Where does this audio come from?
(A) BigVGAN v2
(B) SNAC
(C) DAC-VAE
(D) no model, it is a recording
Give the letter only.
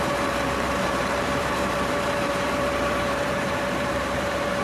A